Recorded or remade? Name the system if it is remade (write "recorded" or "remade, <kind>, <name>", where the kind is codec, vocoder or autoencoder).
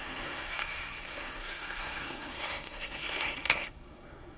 remade, codec, SNAC